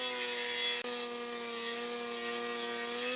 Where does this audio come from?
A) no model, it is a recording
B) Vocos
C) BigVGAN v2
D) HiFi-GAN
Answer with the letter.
A